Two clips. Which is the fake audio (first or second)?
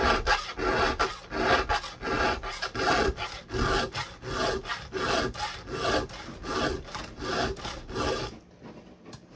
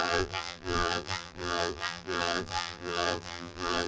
second